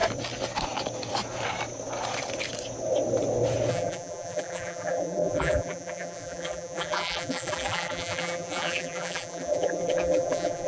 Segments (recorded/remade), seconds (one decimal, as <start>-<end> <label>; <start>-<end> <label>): 0.0-3.7 recorded; 3.7-10.7 remade